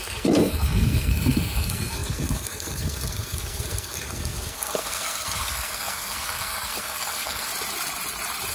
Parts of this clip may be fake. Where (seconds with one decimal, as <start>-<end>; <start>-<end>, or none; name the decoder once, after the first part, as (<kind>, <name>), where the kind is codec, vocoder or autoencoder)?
0.0-7.5 (codec, SNAC)